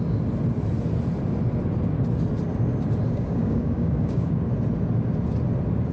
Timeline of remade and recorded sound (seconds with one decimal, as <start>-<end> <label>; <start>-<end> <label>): 0.0-3.1 recorded; 3.1-4.4 remade; 4.4-5.9 recorded